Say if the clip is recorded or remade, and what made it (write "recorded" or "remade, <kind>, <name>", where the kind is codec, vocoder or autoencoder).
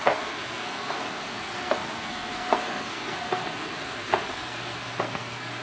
remade, codec, SNAC